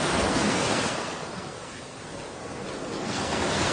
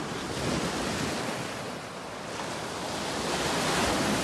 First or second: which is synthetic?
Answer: first